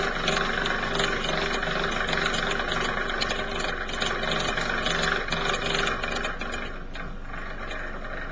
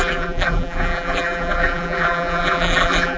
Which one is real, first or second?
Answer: first